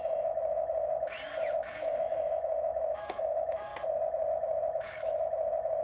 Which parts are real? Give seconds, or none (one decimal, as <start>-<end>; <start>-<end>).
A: 0.9-1.5; 3.7-4.3